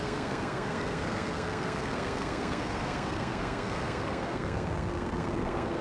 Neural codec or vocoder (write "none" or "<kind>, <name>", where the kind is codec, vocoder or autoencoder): codec, SNAC